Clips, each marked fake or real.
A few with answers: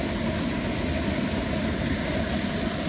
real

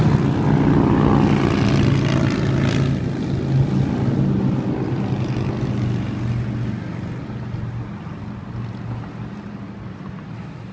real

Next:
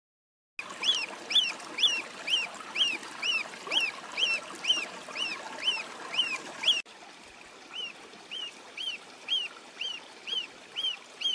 real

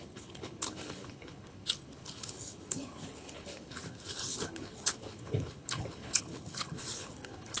fake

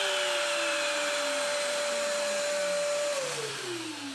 fake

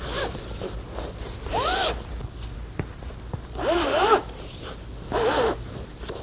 real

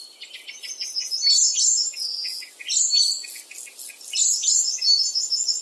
real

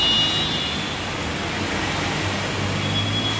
real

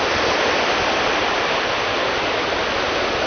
real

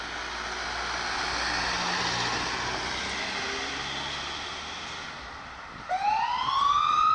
real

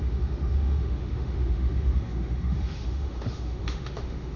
fake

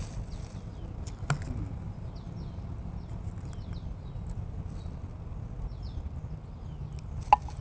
real